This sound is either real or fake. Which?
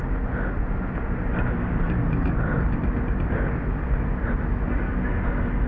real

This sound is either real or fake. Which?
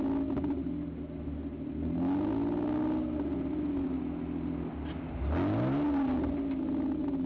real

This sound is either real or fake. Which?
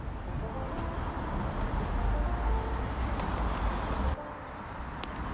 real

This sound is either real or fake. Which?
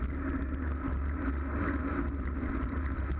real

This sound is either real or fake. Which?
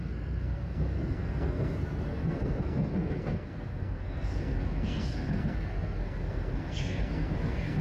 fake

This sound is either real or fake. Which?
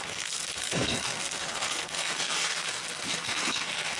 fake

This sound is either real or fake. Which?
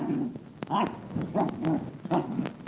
real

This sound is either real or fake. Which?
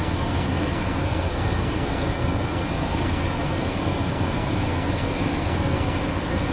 fake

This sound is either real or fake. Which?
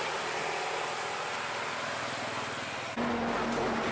real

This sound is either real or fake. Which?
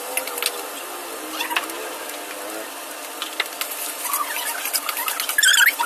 real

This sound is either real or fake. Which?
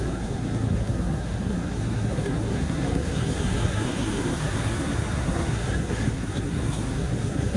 fake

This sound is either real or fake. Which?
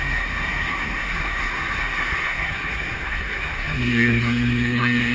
fake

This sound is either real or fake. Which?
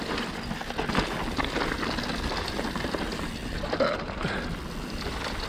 real